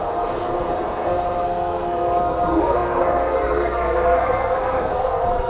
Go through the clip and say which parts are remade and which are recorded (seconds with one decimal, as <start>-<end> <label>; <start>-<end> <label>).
0.0-5.5 remade